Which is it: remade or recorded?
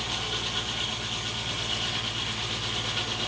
recorded